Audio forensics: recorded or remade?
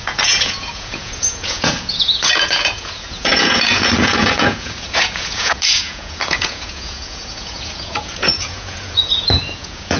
remade